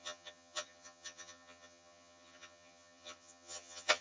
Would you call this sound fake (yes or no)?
yes